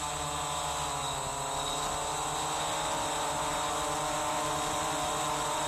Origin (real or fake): real